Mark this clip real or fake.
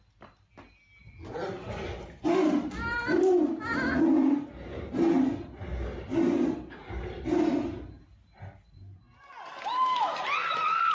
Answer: real